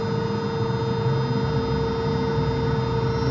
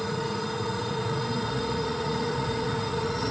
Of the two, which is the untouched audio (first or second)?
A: first